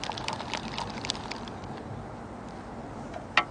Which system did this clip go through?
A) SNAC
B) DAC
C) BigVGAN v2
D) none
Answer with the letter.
D